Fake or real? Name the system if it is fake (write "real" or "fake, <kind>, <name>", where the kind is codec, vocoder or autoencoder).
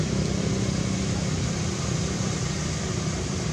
fake, vocoder, BigVGAN v2